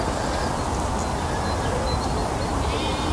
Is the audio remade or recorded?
recorded